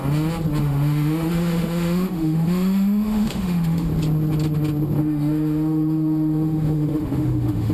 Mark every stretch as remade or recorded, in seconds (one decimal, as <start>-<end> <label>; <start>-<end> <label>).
0.0-0.6 recorded; 0.6-3.9 remade; 3.9-5.0 recorded; 5.0-7.7 remade